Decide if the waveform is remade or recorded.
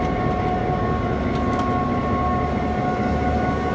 recorded